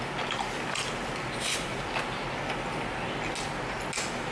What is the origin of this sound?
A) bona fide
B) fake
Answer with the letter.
A